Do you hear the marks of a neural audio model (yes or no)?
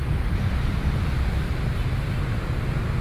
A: no